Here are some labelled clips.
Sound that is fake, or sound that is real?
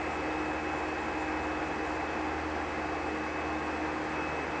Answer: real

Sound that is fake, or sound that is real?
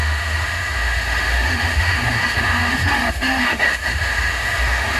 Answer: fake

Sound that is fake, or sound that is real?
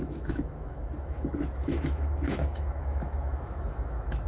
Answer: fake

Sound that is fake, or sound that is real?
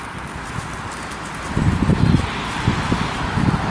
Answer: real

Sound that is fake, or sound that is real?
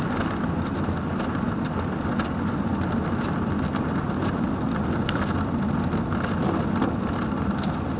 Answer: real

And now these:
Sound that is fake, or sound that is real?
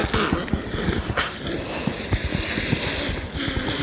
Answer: real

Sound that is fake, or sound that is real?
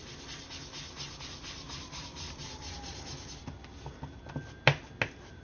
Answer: real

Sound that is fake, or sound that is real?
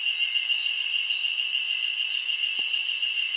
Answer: real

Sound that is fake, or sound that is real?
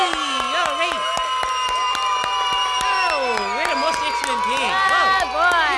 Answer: real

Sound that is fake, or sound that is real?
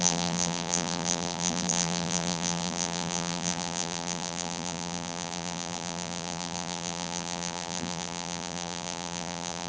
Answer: fake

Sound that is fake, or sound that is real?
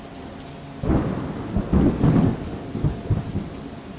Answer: real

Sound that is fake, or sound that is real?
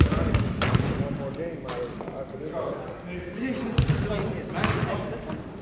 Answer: real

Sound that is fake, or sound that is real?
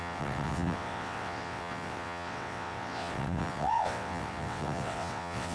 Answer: fake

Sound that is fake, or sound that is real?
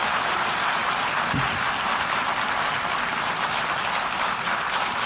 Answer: real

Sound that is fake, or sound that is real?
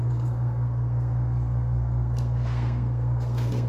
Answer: fake